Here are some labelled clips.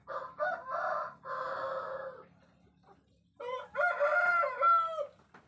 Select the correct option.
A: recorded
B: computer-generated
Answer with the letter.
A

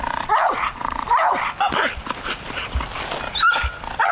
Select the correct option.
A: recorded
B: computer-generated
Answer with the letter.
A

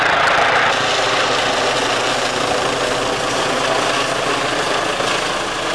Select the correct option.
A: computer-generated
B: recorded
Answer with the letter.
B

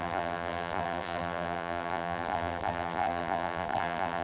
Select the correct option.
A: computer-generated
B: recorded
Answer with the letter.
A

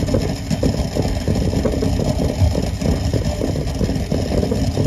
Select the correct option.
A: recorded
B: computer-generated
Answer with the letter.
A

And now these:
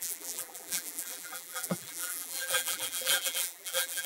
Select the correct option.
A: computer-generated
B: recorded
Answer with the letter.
A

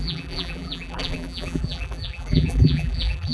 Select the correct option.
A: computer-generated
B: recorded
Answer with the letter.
A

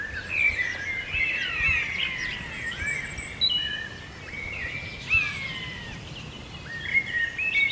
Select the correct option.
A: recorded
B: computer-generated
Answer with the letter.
A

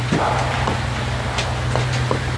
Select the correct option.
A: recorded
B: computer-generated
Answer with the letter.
A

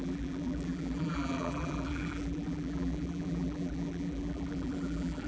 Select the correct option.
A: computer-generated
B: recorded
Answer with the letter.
A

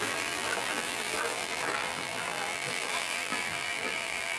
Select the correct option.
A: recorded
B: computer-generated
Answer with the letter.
B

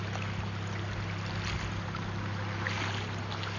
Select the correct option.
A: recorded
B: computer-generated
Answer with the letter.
A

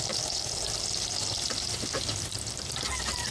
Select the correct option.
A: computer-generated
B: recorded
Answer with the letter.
B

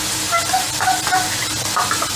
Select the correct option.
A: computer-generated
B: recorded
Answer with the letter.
B